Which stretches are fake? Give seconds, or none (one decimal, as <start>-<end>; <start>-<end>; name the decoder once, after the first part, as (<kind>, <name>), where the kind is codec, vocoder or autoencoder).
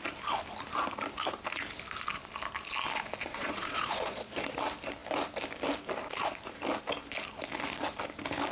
3.2-4.6 (vocoder, Vocos)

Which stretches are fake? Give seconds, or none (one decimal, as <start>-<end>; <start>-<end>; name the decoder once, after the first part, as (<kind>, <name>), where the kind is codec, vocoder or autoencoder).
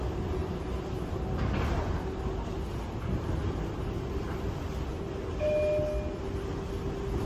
none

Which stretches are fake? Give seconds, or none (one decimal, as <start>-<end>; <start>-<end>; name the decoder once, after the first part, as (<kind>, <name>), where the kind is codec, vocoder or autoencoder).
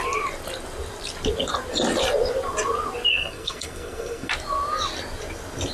3.1-4.3 (codec, SNAC)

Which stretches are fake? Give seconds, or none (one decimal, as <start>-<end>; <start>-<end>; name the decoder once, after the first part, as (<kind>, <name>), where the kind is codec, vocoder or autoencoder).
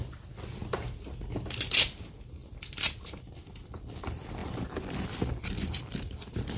0.0-0.6 (vocoder, BigVGAN v2); 1.6-6.6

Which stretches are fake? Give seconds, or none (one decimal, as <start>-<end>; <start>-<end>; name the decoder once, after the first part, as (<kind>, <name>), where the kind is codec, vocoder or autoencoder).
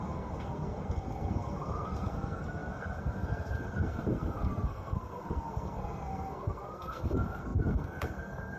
0.0-8.6 (codec, SNAC)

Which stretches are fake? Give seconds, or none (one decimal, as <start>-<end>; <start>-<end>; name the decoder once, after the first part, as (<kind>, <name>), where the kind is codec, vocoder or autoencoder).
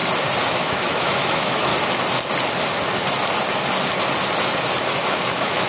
0.5-1.7 (autoencoder, DAC-VAE); 5.1-5.7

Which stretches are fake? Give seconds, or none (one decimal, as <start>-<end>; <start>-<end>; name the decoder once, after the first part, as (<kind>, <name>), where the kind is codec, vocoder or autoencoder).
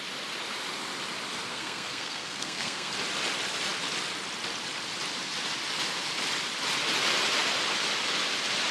1.5-2.9 (codec, SNAC)